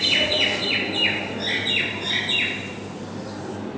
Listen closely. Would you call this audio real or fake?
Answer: real